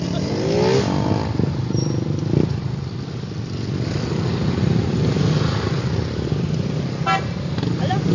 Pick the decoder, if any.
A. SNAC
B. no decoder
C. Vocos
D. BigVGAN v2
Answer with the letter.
B